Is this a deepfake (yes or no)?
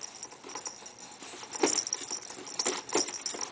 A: no